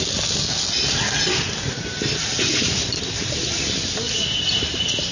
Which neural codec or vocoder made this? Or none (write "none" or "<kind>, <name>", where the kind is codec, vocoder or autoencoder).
none